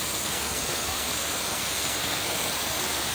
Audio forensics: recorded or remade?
remade